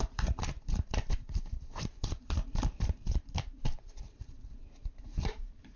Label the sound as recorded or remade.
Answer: remade